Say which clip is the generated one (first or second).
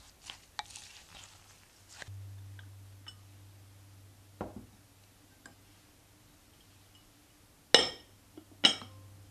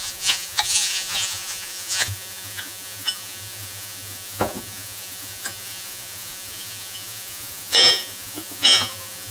second